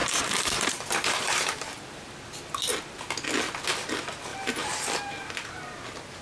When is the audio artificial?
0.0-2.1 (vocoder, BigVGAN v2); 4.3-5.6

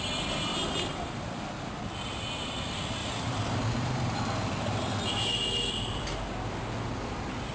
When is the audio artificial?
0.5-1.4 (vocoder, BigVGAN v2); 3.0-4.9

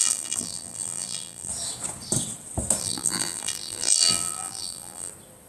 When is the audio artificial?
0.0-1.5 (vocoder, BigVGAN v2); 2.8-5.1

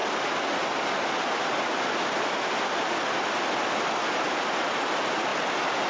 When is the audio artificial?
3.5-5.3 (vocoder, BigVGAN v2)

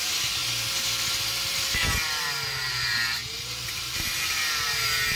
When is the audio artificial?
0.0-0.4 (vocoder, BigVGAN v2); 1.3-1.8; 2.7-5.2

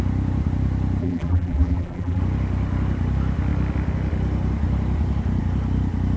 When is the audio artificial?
1.0-2.2 (vocoder, BigVGAN v2)

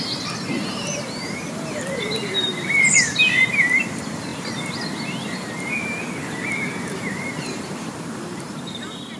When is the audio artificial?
0.0-9.2 (vocoder, BigVGAN v2)